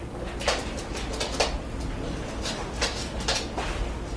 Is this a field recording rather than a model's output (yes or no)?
yes